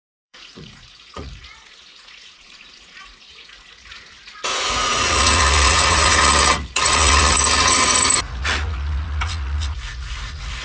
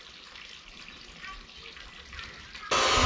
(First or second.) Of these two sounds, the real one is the second